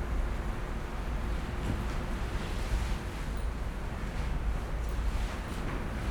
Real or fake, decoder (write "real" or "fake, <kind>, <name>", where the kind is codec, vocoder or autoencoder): real